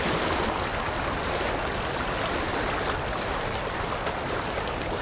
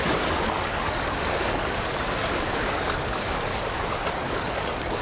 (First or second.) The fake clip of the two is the second